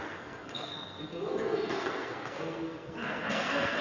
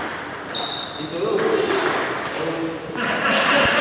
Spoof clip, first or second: first